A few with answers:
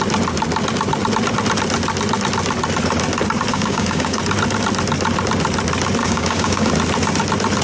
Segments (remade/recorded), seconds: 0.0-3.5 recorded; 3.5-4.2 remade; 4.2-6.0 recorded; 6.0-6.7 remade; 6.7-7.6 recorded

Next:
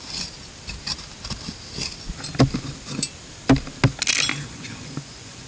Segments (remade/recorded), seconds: 0.0-4.3 recorded; 4.3-5.5 remade